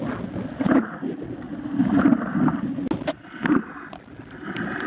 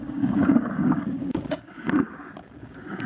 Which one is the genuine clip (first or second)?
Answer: first